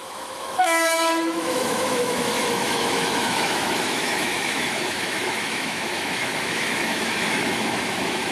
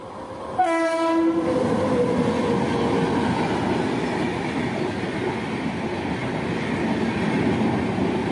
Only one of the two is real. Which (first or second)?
second